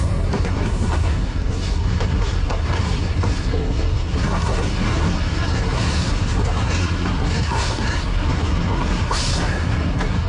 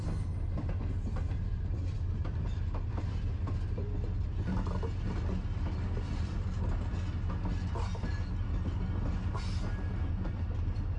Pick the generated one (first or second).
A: first